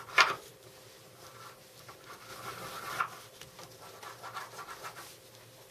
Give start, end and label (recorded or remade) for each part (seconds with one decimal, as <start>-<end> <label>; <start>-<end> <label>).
0.0-5.7 recorded